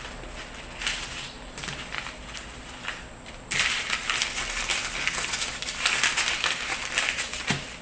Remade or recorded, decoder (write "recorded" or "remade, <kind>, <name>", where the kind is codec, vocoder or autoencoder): recorded